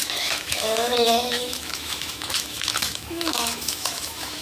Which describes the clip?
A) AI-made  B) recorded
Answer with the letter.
A